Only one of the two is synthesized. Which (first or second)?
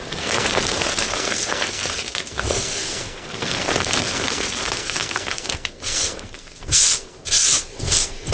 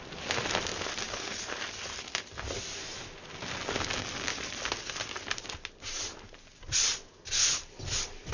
first